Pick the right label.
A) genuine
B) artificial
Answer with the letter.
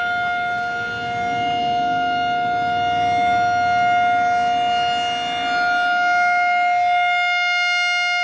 A